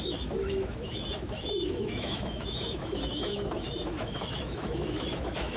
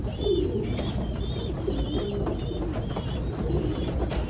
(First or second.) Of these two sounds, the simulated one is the first